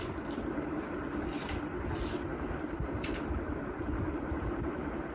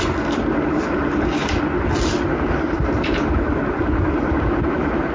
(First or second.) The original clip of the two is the second